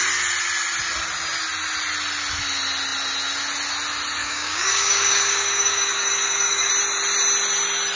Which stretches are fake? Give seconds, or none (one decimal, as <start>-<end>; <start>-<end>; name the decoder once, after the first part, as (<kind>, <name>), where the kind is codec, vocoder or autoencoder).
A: 4.2-6.7 (codec, DAC)